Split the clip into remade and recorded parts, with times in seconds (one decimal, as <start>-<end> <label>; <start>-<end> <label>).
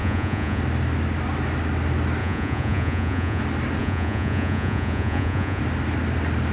0.0-0.6 remade; 0.6-2.2 recorded; 2.2-3.4 remade; 3.4-3.8 recorded; 3.8-5.6 remade; 5.6-6.5 recorded